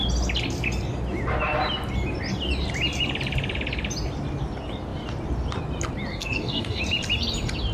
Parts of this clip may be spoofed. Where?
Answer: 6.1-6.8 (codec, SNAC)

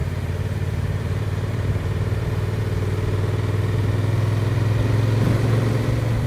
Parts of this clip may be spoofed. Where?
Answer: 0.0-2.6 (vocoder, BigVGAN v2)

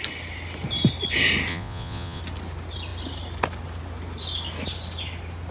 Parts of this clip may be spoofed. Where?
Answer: 1.5-2.2 (vocoder, Vocos)

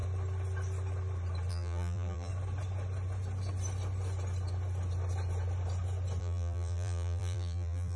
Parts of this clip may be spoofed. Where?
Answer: 1.5-2.3 (vocoder, BigVGAN v2); 6.2-8.0

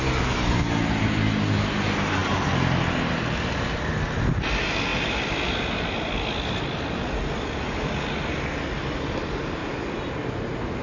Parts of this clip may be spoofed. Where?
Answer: none

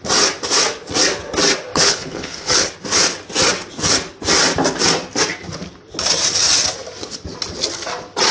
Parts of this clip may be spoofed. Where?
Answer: 1.7-2.7 (codec, HILCodec)

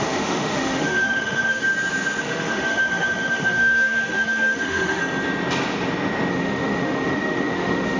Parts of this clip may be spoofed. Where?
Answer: 0.0-1.6 (autoencoder, DAC-VAE); 2.2-5.0; 6.3-8.0

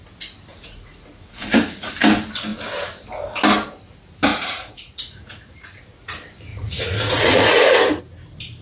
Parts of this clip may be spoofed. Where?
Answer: 0.5-1.9 (vocoder, Vocos); 4.3-5.8; 6.5-8.0